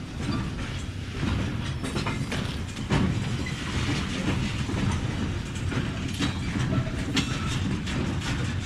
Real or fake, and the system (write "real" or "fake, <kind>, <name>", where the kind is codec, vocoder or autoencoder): real